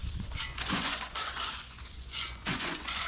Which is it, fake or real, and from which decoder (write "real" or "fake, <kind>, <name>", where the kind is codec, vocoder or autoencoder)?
fake, vocoder, Vocos